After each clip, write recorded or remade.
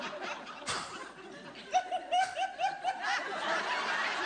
recorded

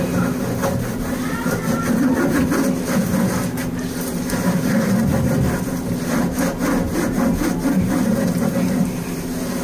recorded